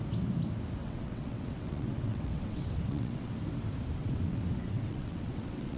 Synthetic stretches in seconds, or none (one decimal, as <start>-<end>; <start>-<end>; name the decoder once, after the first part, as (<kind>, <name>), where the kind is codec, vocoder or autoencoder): 0.8-3.3 (vocoder, WaveNeXt); 4.0-5.8